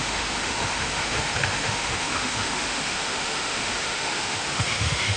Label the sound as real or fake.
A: fake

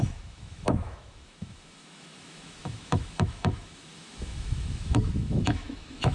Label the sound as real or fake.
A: fake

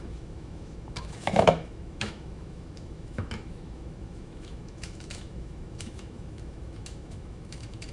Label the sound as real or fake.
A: fake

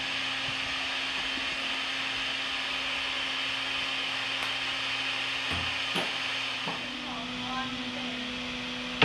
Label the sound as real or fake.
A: real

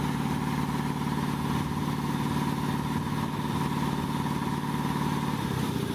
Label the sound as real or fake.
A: real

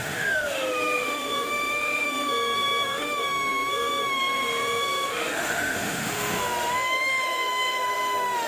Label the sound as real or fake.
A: fake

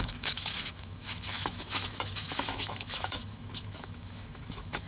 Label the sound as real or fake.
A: fake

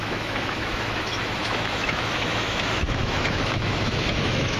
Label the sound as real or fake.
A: fake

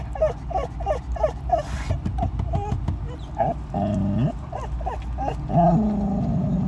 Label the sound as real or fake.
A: real